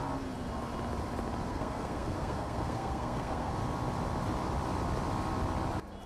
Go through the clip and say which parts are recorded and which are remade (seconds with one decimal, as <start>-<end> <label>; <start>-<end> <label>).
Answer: 0.0-1.5 recorded; 1.5-3.5 remade; 3.5-6.1 recorded